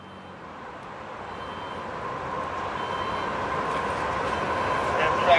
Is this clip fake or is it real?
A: real